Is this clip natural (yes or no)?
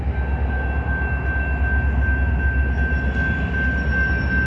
yes